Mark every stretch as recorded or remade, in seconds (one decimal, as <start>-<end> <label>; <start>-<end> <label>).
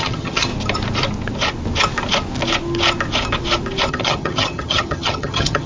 0.0-0.5 remade; 0.5-3.9 recorded; 3.9-5.7 remade